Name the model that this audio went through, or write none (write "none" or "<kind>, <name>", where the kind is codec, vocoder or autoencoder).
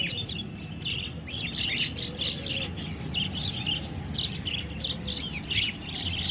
none